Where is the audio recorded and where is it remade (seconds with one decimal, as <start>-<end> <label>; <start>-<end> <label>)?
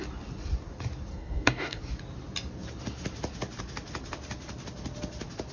0.0-1.1 recorded; 1.1-1.8 remade; 1.8-5.5 recorded